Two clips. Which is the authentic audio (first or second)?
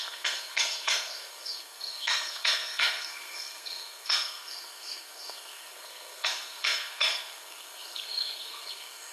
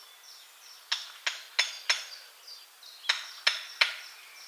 second